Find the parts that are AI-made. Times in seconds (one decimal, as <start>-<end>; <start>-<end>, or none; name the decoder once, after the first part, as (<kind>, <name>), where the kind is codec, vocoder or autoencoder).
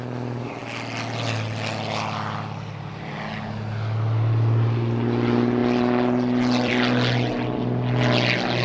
5.6-6.7 (vocoder, BigVGAN v2)